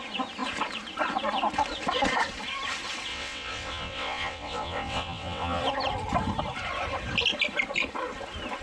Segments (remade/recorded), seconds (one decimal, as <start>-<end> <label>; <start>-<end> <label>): 0.0-3.1 recorded; 3.1-5.6 remade; 5.6-8.6 recorded

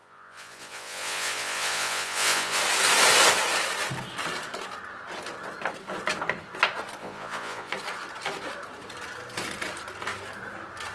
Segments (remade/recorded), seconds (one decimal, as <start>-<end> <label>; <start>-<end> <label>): 0.0-2.6 remade; 2.6-7.0 recorded; 7.0-7.7 remade; 7.7-10.9 recorded

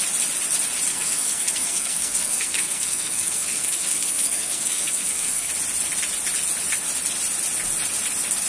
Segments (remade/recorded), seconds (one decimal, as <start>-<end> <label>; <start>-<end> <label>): 0.0-0.9 recorded; 0.9-5.5 remade; 5.5-8.5 recorded

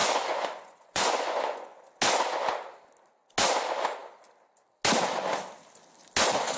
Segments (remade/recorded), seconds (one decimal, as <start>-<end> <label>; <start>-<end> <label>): 0.0-1.9 remade; 1.9-6.6 recorded

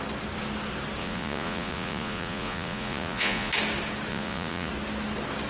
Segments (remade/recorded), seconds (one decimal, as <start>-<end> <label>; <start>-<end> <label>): 0.0-1.0 recorded; 1.0-3.5 remade; 3.5-4.1 recorded; 4.1-4.7 remade; 4.7-5.5 recorded

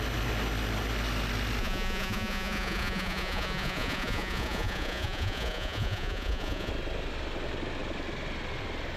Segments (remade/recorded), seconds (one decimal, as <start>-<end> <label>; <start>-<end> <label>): 0.0-1.6 recorded; 1.6-6.7 remade; 6.7-9.0 recorded

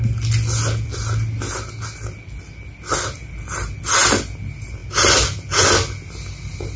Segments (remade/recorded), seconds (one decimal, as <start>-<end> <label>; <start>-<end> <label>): 0.0-6.8 recorded